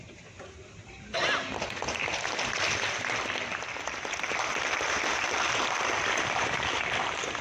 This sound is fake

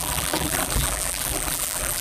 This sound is fake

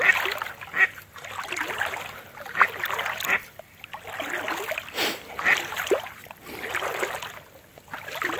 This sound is real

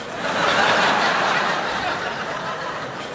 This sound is fake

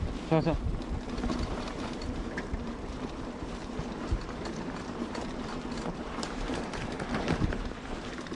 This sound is fake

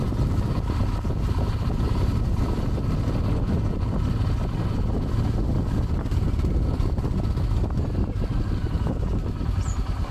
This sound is real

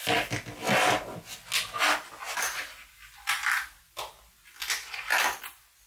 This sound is real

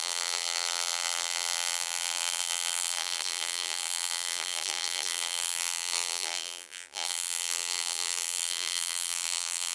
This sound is fake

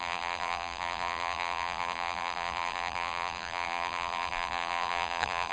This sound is fake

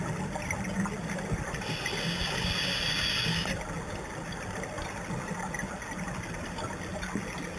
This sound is real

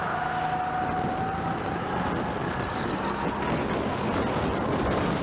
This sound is real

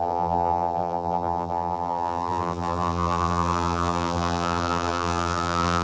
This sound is fake